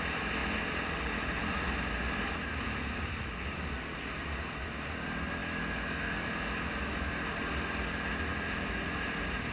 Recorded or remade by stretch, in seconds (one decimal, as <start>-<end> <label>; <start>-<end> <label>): 0.0-5.4 recorded; 5.4-6.3 remade; 6.3-9.5 recorded